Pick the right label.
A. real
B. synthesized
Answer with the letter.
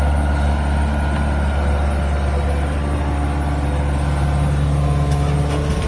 A